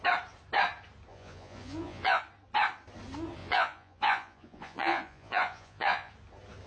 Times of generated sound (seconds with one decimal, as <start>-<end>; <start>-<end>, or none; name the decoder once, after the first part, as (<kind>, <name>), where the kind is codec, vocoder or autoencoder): 1.1-2.2 (vocoder, Vocos); 3.4-6.1